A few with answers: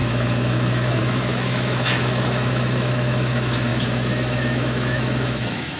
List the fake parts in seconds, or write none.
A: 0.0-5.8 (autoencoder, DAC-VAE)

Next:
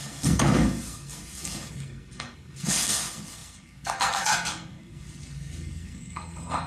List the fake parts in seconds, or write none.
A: 0.0-6.7 (codec, SNAC)

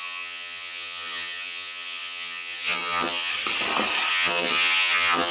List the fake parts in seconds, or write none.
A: 0.0-3.3 (vocoder, HiFi-GAN); 4.1-5.3